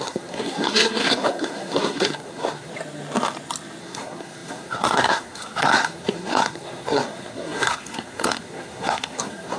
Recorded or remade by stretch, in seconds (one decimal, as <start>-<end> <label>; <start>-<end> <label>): 0.0-2.7 remade; 2.7-3.8 recorded; 3.8-9.6 remade